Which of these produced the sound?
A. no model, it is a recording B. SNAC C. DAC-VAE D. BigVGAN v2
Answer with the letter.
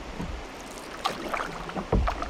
D